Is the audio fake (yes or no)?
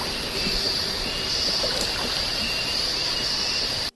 yes